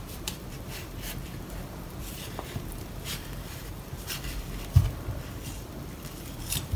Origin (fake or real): fake